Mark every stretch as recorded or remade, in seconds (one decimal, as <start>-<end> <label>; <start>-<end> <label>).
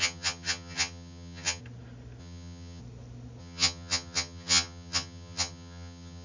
0.0-1.6 remade; 1.6-2.2 recorded; 2.2-2.8 remade; 2.8-3.4 recorded; 3.4-6.2 remade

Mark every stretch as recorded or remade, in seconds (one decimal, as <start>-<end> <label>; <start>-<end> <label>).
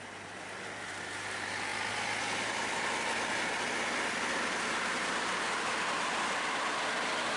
0.0-7.4 recorded